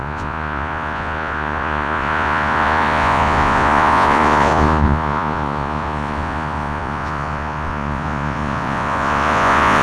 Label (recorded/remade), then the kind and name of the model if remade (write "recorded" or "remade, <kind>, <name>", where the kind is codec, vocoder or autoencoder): remade, vocoder, Vocos